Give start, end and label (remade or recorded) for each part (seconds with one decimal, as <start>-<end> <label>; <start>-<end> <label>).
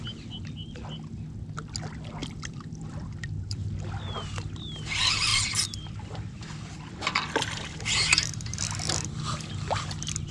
0.0-2.2 recorded; 2.2-3.7 remade; 3.7-5.3 recorded; 5.3-7.8 remade; 7.8-10.3 recorded